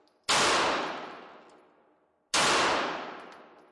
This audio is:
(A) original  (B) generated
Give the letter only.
A